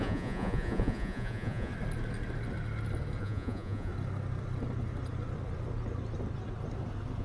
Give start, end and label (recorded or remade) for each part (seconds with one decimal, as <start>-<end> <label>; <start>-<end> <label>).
0.0-1.7 remade; 1.7-3.2 recorded; 3.2-3.9 remade; 3.9-7.2 recorded